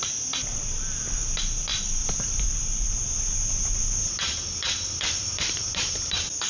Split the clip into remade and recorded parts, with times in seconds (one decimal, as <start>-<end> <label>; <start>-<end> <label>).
0.0-6.5 recorded